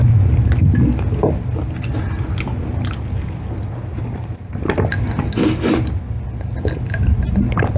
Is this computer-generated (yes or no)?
no